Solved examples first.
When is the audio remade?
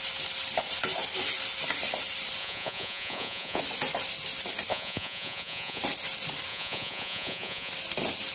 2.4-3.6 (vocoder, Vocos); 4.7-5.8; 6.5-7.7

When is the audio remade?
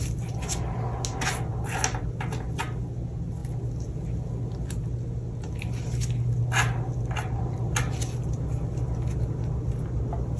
7.2-7.8 (vocoder, BigVGAN v2)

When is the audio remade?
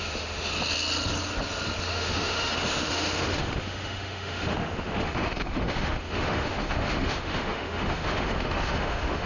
0.0-0.5 (autoencoder, DAC-VAE); 1.8-9.3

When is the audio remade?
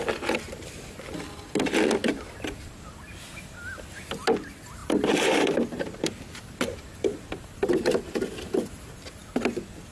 4.8-7.3 (vocoder, BigVGAN v2)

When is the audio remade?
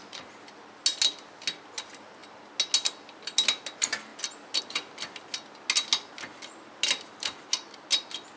none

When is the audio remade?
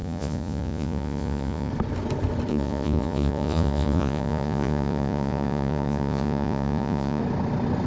0.0-1.7 (vocoder, Vocos); 2.5-7.2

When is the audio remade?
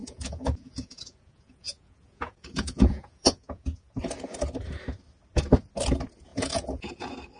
0.0-4.0 (vocoder, Vocos); 6.3-6.9